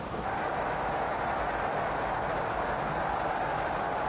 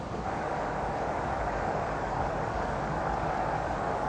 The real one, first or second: first